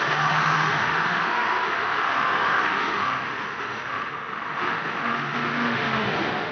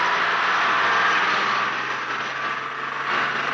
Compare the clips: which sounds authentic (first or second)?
second